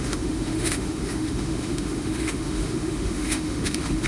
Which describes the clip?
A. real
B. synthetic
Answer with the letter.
B